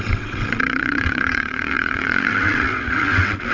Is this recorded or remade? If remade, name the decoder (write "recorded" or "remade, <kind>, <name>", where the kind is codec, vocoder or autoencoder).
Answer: remade, vocoder, WaveNeXt